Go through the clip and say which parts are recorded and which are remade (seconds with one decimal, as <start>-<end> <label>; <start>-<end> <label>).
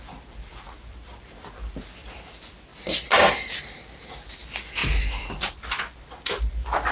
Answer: 0.0-2.7 remade; 2.7-4.3 recorded; 4.3-4.8 remade; 4.8-6.9 recorded